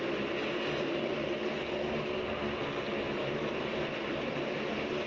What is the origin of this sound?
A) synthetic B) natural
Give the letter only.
B